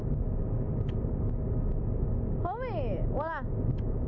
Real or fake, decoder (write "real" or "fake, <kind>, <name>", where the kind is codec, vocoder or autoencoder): real